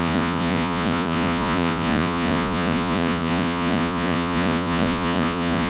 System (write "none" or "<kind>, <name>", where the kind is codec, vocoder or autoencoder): vocoder, Vocos